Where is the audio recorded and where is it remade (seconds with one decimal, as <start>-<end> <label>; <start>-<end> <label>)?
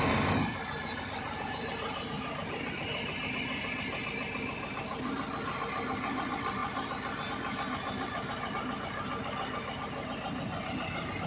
0.0-0.5 recorded; 0.5-3.3 remade; 3.3-6.6 recorded; 6.6-7.3 remade; 7.3-11.3 recorded